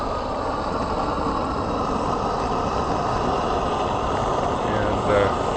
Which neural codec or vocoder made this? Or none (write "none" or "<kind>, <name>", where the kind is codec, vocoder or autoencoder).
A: vocoder, BigVGAN v2